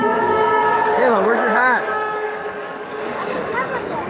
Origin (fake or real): fake